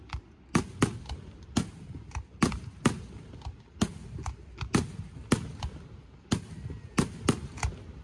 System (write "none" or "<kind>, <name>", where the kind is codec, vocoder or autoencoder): none